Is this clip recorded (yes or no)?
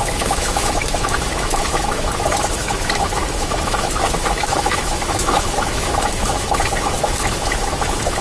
no